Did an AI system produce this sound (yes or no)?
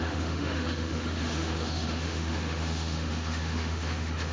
yes